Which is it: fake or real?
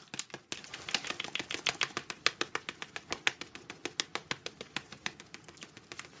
real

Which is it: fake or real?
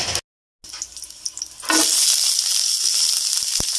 real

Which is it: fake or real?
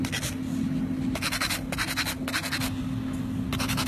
real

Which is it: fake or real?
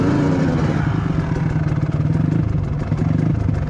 real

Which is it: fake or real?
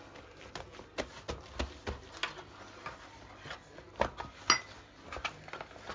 real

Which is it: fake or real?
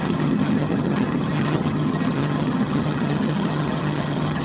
fake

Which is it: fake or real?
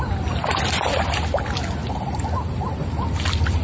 real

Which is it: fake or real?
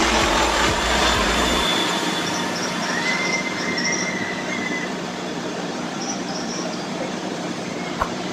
fake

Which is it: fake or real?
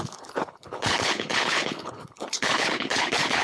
fake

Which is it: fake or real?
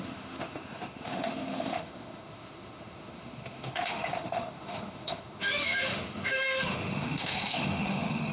fake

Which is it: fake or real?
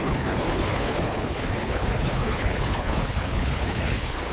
fake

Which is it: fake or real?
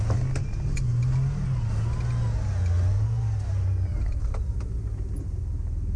real